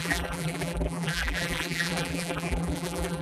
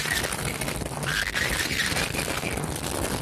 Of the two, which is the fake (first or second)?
first